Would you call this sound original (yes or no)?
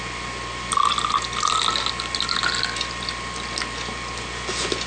yes